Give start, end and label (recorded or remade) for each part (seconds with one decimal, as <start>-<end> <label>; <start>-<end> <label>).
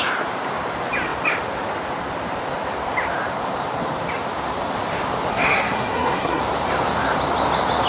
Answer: 0.0-5.3 recorded; 5.3-6.4 remade; 6.4-7.9 recorded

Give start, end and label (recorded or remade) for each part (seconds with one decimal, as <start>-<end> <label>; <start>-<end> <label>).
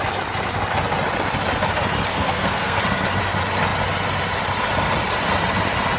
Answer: 0.0-2.1 recorded; 2.1-2.8 remade; 2.8-6.0 recorded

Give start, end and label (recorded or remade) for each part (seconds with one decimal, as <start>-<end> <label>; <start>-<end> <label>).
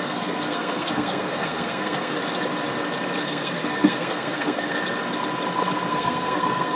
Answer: 0.0-2.2 remade; 2.2-3.2 recorded; 3.2-4.8 remade; 4.8-5.9 recorded; 5.9-6.8 remade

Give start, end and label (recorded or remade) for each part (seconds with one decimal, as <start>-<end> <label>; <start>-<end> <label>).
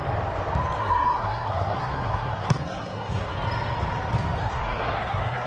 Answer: 0.0-0.8 recorded; 0.8-3.3 remade; 3.3-4.4 recorded; 4.4-5.5 remade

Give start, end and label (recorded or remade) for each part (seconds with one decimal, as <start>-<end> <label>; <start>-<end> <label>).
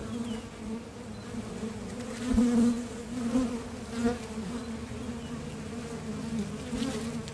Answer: 0.0-7.3 recorded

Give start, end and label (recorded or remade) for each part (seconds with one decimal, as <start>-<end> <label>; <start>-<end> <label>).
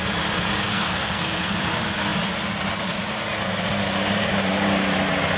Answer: 0.0-0.7 recorded; 0.7-1.7 remade; 1.7-5.4 recorded